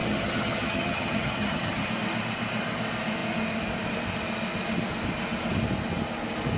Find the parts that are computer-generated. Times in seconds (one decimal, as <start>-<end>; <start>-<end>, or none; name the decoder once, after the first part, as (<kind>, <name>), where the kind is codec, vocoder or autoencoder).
0.0-1.9 (vocoder, HiFi-GAN)